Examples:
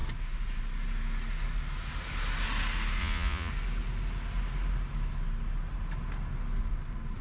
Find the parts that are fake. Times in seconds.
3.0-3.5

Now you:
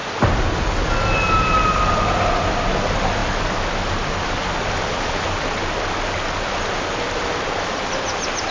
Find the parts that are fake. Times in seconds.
none

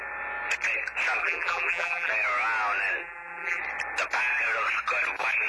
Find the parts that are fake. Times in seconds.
1.2-2.1; 3.0-3.6

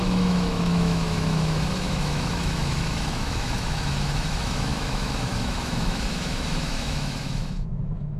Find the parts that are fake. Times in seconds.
0.0-8.2

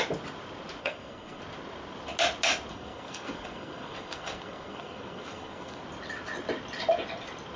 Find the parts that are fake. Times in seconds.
0.8-1.4; 2.7-5.8

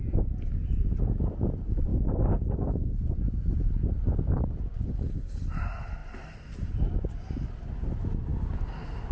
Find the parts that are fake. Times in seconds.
1.9-2.6; 6.0-7.0